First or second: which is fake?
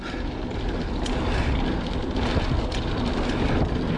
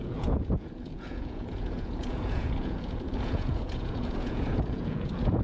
second